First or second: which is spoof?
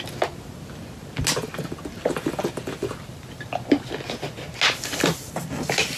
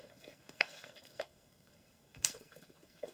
second